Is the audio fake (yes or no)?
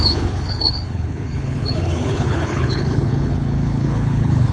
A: yes